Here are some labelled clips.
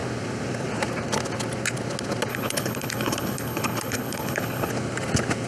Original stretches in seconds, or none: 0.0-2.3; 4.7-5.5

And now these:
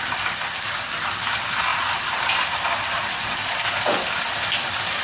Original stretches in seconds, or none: 0.0-1.7; 3.3-5.0

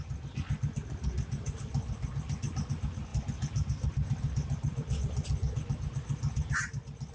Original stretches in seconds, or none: 0.0-7.1

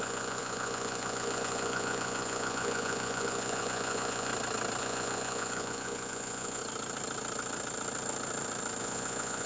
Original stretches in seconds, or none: 4.3-4.8; 6.6-8.8

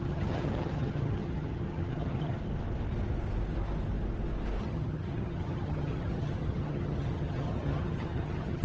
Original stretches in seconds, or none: 2.4-4.6

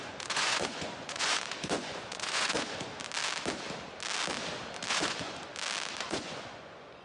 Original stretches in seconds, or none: 2.9-4.9; 5.5-6.0